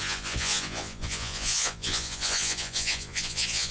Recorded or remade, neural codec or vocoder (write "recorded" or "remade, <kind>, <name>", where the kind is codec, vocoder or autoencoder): remade, vocoder, Vocos